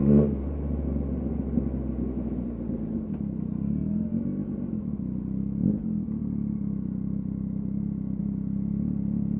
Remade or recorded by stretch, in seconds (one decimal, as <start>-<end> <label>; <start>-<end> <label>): 0.0-9.4 recorded